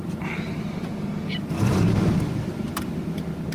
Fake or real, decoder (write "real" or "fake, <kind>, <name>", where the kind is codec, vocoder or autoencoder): real